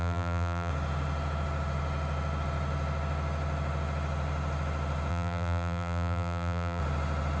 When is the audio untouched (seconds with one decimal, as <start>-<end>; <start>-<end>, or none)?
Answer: 0.7-5.1; 6.8-7.4